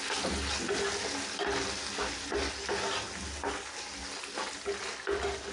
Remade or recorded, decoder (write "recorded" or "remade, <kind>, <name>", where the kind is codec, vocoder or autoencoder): recorded